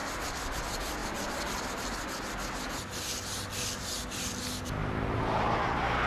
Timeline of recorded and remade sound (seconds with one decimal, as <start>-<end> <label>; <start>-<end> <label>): 0.0-0.6 remade; 0.6-4.8 recorded; 4.8-5.4 remade; 5.4-6.1 recorded

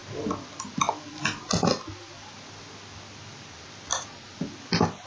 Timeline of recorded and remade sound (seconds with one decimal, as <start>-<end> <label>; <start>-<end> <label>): 0.0-5.1 recorded

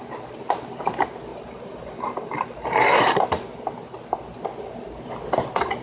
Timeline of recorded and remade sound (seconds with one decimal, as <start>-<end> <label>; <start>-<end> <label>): 0.0-1.3 recorded; 1.3-3.5 remade; 3.5-5.8 recorded

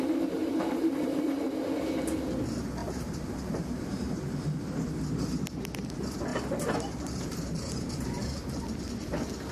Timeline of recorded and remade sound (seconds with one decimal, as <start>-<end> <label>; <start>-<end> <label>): 0.0-0.4 recorded; 0.4-1.5 remade; 1.5-2.8 recorded; 2.8-4.6 remade; 4.6-6.3 recorded; 6.3-8.6 remade; 8.6-9.5 recorded

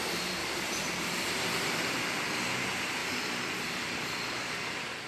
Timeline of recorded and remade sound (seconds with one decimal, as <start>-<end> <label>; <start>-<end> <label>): 0.0-0.4 recorded; 0.4-2.0 remade; 2.0-3.0 recorded; 3.0-4.1 remade; 4.1-5.1 recorded